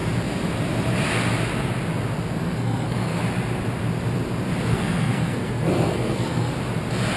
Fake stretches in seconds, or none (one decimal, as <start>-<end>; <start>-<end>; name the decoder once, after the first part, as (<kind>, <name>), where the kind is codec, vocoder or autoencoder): 2.4-3.2 (codec, SNAC); 4.7-6.5